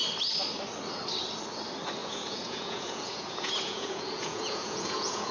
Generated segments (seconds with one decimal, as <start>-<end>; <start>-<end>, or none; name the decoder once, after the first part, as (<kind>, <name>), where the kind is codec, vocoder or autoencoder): 2.0-5.3 (vocoder, Vocos)